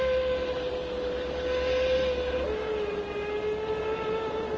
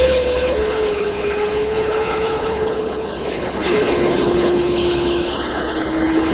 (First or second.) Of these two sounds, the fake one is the second